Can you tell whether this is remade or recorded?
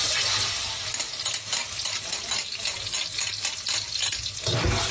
recorded